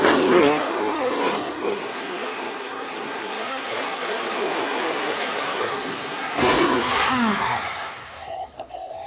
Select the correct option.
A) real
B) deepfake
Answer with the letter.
B